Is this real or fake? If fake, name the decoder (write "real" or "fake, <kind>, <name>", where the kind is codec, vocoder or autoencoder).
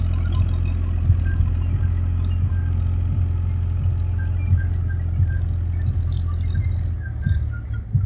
real